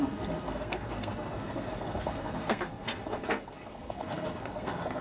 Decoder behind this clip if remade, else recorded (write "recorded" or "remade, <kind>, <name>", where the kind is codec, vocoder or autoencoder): remade, codec, SNAC